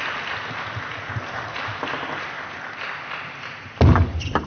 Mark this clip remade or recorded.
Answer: remade